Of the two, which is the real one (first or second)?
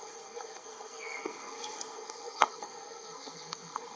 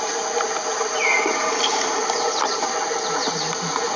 second